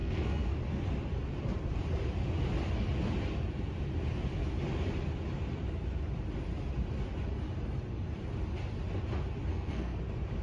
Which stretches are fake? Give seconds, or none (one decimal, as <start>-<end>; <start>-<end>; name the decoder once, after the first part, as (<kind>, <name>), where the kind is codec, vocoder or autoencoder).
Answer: 0.0-0.5 (codec, SNAC); 9.5-10.0

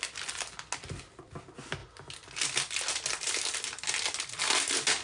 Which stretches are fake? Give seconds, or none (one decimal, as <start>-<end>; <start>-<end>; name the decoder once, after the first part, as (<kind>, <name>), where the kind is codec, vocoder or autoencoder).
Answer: none

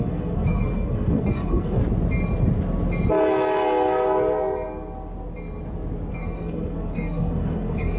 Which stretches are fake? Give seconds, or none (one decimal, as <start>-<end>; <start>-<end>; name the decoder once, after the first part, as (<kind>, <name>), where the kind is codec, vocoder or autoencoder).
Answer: 0.0-1.8 (codec, SNAC); 6.1-8.0

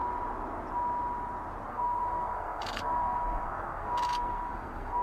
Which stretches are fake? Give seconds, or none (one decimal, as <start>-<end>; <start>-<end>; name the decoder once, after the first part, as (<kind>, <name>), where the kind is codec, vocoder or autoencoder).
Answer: 1.7-5.0 (codec, SNAC)

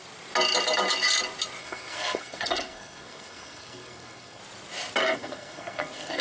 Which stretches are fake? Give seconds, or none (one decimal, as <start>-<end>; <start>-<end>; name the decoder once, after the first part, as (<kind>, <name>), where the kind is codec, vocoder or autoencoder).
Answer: 1.6-4.4 (codec, SNAC); 5.0-6.2